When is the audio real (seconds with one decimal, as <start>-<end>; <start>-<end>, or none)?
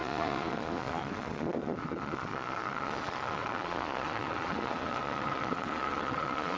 none